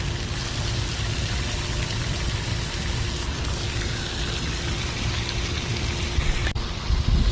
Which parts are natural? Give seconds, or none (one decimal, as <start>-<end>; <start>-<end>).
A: 0.0-7.3